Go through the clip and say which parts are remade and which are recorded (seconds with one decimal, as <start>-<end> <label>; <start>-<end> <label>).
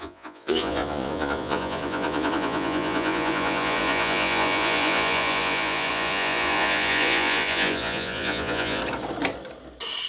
0.0-8.8 remade; 8.8-10.1 recorded